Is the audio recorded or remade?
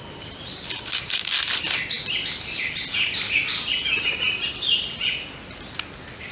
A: recorded